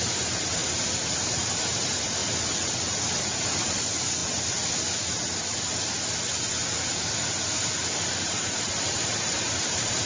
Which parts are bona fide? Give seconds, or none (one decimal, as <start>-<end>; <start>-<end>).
0.6-1.1; 2.2-3.2; 4.2-8.2